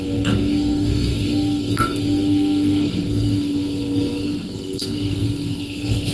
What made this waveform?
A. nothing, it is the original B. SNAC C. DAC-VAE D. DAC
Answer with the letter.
B